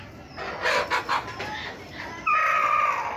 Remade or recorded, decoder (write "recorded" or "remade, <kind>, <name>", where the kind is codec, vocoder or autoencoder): recorded